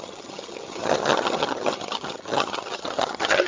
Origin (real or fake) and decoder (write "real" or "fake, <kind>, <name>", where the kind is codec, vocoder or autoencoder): fake, vocoder, HiFi-GAN